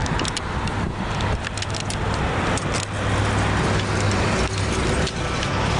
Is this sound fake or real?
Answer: real